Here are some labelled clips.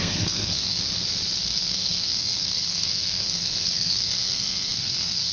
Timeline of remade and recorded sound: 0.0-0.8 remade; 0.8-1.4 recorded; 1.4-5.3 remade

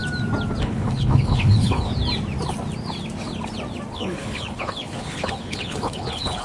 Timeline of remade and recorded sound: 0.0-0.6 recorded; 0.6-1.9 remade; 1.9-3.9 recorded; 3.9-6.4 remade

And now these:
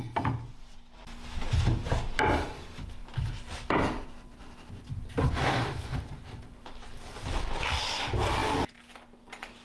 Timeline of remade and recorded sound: 0.0-9.6 recorded